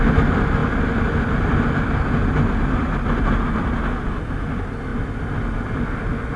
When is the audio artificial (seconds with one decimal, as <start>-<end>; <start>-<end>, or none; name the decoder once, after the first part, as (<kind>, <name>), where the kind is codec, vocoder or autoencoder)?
none